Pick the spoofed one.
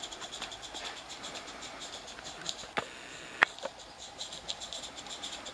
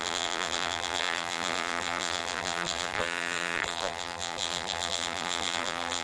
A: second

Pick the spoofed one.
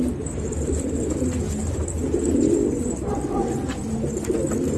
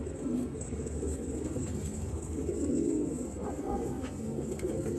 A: second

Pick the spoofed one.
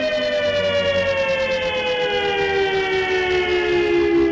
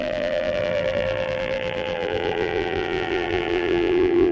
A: second